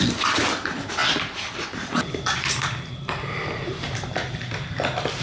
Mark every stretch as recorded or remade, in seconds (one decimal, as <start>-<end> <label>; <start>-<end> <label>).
0.0-5.2 recorded